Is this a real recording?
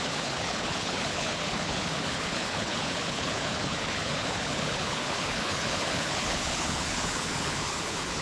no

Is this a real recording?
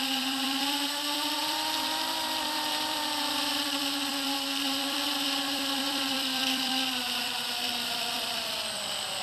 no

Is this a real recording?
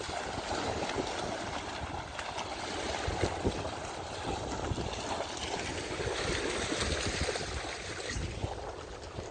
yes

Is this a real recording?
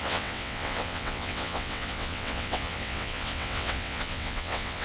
no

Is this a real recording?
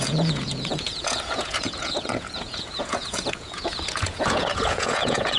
no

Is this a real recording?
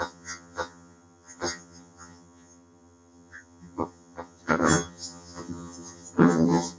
no